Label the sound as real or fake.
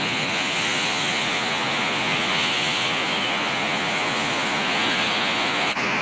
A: fake